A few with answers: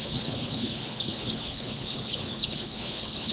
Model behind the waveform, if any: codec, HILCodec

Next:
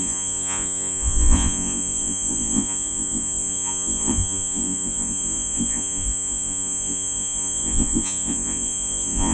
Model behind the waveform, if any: vocoder, Vocos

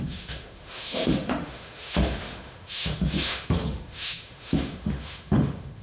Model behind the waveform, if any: autoencoder, DAC-VAE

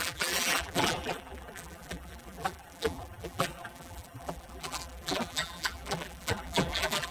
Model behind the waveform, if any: vocoder, BigVGAN v2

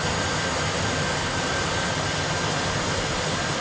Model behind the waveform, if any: none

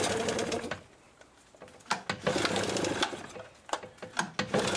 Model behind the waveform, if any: none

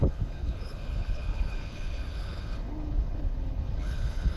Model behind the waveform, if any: codec, HILCodec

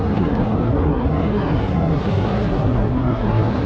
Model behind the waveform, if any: codec, SNAC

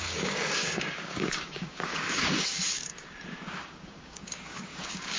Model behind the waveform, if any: codec, DAC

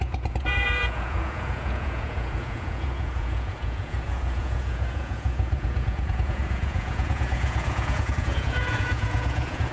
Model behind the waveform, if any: vocoder, Vocos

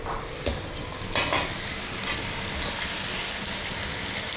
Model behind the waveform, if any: none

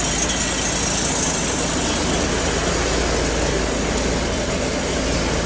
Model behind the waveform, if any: none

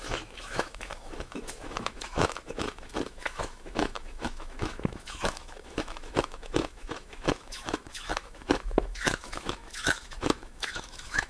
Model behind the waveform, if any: autoencoder, DAC-VAE